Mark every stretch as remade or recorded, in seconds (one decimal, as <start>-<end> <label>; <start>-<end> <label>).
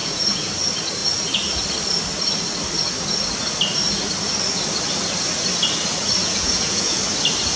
0.0-0.5 remade; 0.5-6.2 recorded; 6.2-7.0 remade; 7.0-7.6 recorded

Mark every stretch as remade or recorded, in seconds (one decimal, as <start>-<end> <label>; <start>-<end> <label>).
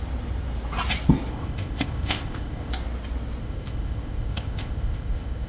0.0-1.3 recorded; 1.3-2.7 remade; 2.7-3.4 recorded; 3.4-5.5 remade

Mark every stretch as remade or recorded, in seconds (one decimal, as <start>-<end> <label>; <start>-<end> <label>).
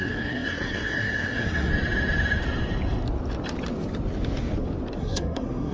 0.0-1.7 remade; 1.7-5.0 recorded; 5.0-5.7 remade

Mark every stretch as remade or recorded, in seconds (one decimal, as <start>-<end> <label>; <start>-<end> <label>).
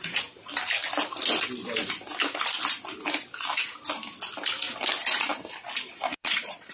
0.0-5.9 recorded; 5.9-6.7 remade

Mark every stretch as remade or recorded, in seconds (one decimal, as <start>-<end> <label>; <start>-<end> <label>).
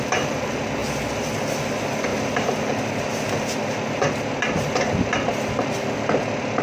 0.0-2.1 recorded; 2.1-4.1 remade; 4.1-6.6 recorded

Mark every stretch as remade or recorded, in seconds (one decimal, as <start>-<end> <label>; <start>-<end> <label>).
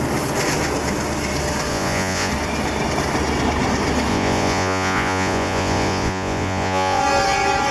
0.0-1.7 recorded; 1.7-2.3 remade; 2.3-4.1 recorded; 4.1-7.0 remade; 7.0-7.7 recorded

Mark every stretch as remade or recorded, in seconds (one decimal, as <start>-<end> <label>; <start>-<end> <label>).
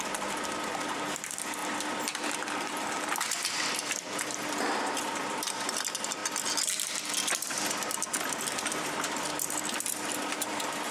0.0-1.6 remade; 1.6-2.3 recorded; 2.3-6.2 remade; 6.2-8.6 recorded; 8.6-10.9 remade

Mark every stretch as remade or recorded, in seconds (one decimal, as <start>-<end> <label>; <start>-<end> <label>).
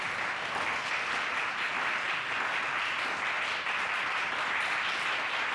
0.0-5.5 recorded